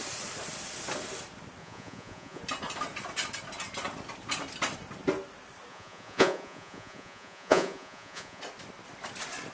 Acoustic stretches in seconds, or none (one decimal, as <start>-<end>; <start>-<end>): 0.0-1.6; 2.4-5.7; 8.4-9.5

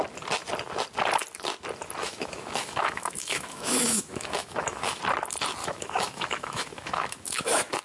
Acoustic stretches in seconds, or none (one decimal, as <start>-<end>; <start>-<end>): 0.0-2.0; 5.0-5.6

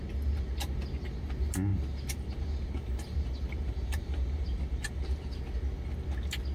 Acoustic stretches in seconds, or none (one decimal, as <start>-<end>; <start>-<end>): 0.0-1.7; 5.4-6.5

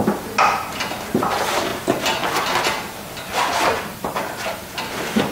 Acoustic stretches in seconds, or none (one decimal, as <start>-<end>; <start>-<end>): 0.0-3.3; 4.6-5.3

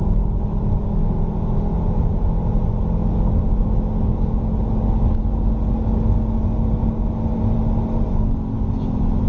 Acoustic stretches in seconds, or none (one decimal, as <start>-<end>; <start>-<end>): 0.0-9.3

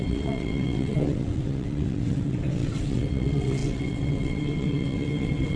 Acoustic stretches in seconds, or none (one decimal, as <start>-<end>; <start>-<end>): none

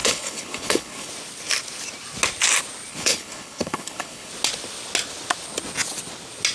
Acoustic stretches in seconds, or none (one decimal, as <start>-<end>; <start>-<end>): 1.1-2.9; 4.3-6.5